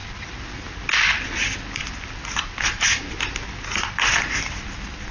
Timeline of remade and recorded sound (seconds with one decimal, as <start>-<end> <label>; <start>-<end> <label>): 0.0-5.1 recorded